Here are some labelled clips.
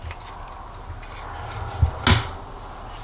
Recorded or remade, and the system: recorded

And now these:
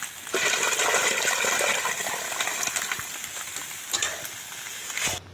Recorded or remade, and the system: recorded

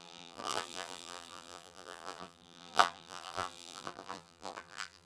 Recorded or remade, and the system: remade, vocoder, BigVGAN v2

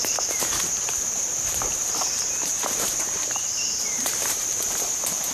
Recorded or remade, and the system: remade, vocoder, BigVGAN v2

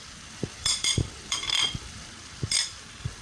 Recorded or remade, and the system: remade, vocoder, BigVGAN v2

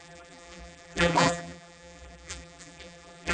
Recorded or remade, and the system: remade, vocoder, BigVGAN v2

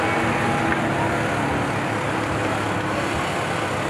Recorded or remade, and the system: recorded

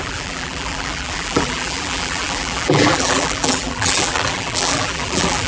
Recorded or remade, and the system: remade, vocoder, BigVGAN v2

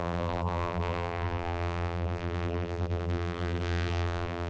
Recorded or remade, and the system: remade, vocoder, BigVGAN v2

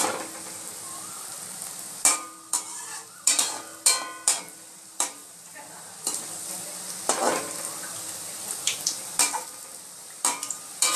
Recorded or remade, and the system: remade, vocoder, BigVGAN v2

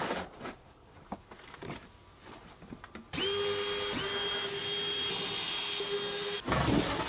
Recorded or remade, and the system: recorded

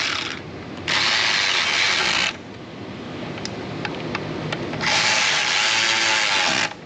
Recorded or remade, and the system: recorded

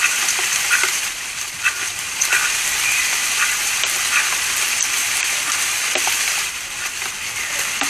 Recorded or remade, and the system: remade, vocoder, BigVGAN v2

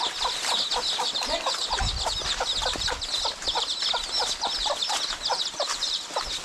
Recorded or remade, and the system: recorded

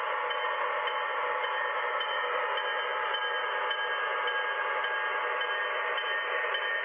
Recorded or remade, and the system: recorded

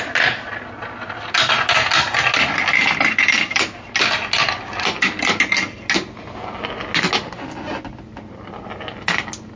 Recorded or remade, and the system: recorded